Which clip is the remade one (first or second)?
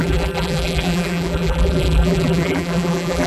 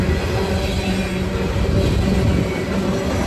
first